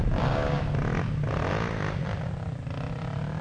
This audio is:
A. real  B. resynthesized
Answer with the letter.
A